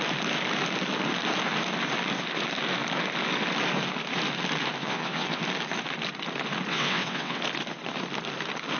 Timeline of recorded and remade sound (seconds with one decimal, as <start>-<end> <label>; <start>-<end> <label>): 0.0-4.8 recorded; 4.8-5.4 remade; 5.4-6.7 recorded; 6.7-7.4 remade; 7.4-8.8 recorded